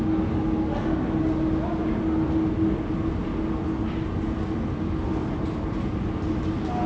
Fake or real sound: real